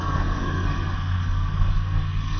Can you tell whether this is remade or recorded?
remade